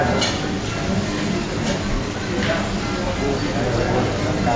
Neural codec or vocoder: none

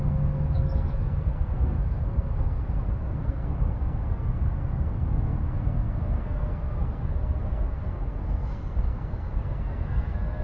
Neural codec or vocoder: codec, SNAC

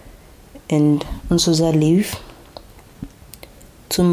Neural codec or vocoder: none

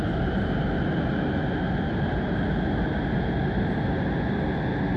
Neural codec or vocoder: none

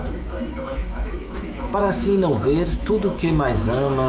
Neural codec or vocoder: autoencoder, DAC-VAE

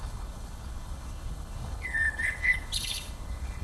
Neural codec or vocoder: codec, HILCodec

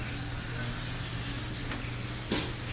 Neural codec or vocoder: none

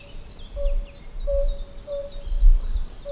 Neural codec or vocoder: none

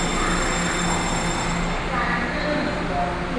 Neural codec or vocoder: none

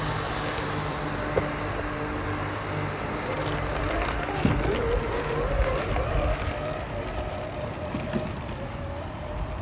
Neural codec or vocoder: none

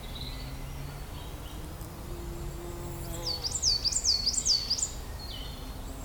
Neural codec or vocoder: none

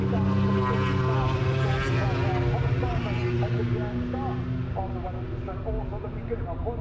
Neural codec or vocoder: none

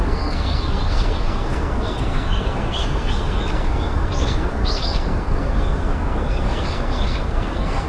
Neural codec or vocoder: codec, SNAC